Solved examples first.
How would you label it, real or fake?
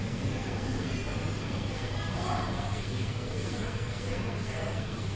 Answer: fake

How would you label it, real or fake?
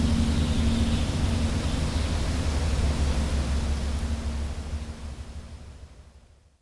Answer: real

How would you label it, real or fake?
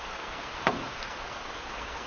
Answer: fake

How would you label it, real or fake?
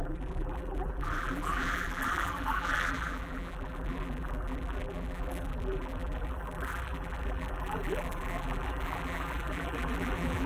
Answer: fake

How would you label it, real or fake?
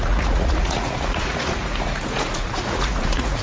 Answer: fake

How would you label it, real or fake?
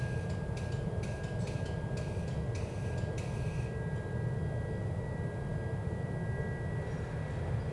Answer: real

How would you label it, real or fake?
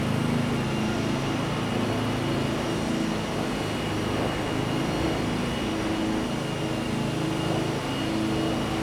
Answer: real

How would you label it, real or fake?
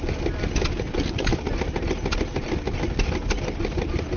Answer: real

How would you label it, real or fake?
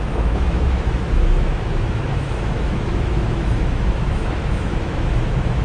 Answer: fake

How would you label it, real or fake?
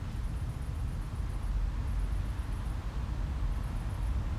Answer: real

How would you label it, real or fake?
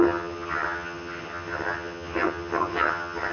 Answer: fake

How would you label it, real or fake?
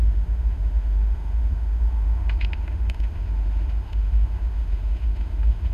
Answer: fake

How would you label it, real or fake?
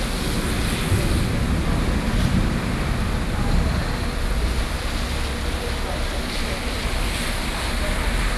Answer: real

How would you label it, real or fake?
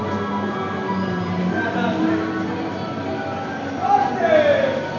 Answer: real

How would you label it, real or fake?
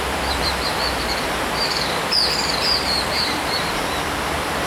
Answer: fake